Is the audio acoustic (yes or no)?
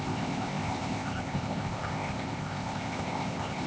no